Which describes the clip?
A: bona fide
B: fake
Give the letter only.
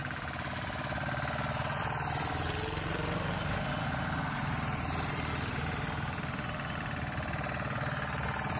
B